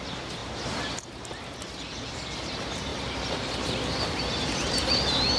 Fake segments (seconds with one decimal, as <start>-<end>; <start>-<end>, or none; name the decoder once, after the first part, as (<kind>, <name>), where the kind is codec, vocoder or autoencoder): none